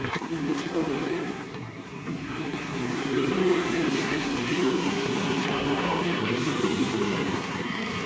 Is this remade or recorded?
remade